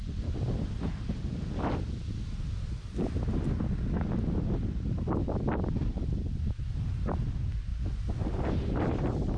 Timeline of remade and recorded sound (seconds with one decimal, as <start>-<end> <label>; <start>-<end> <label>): 0.0-9.4 recorded